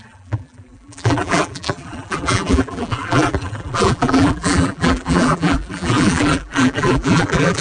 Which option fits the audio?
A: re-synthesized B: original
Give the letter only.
A